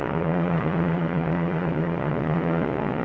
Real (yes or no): no